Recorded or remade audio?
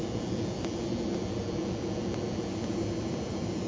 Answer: recorded